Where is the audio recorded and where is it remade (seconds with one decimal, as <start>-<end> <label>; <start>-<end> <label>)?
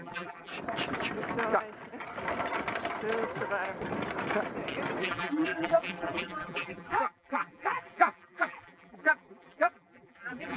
0.0-0.5 remade; 0.5-5.0 recorded; 5.0-10.6 remade